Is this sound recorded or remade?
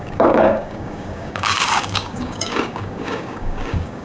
remade